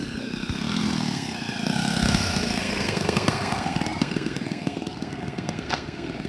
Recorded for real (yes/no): no